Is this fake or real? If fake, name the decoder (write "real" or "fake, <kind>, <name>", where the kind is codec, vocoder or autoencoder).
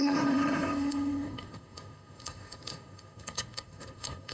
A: fake, codec, SNAC